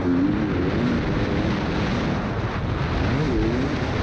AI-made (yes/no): no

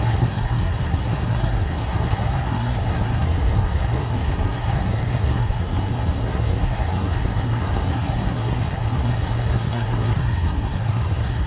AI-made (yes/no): yes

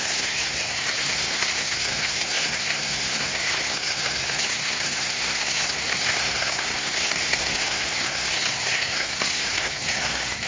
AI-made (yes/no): yes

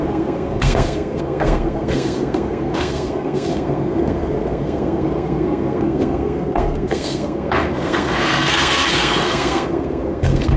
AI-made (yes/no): yes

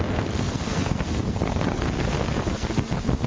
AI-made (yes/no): yes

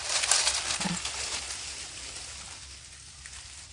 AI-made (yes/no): no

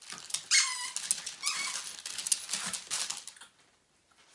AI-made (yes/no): no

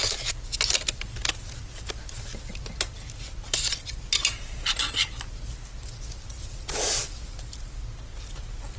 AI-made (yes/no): no